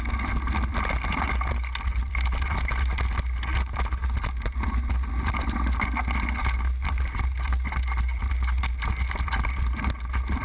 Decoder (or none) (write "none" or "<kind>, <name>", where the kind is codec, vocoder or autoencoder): none